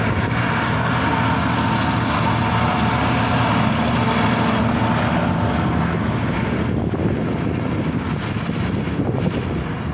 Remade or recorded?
recorded